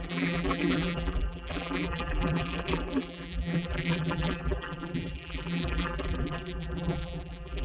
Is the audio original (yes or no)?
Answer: no